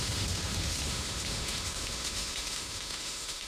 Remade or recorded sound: remade